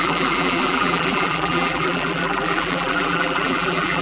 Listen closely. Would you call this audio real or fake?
fake